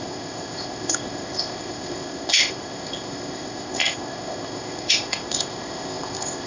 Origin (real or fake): fake